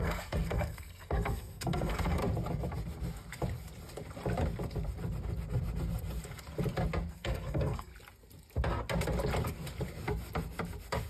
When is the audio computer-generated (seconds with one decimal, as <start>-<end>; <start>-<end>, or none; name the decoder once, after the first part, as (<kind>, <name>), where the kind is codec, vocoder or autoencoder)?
0.0-2.2 (codec, SNAC); 7.1-7.9